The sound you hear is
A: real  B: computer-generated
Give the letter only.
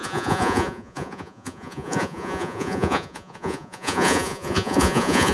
B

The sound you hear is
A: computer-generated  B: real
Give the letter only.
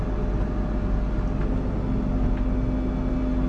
B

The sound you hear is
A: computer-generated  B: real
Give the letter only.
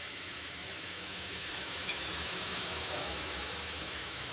A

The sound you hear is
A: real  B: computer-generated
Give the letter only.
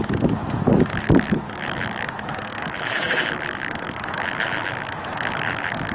B